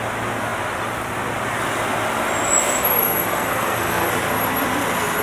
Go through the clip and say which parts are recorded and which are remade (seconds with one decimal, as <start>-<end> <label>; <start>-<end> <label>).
0.0-3.0 recorded; 3.0-4.1 remade; 4.1-5.2 recorded